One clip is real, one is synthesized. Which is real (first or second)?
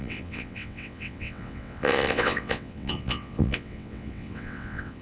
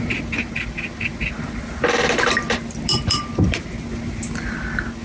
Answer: second